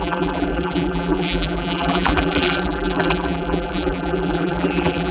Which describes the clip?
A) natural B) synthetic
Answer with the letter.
B